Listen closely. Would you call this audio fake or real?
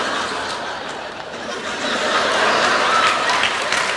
real